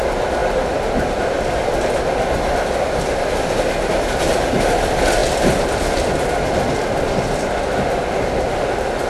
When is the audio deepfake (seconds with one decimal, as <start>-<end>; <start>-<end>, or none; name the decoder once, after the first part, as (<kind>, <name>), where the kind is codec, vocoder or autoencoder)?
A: none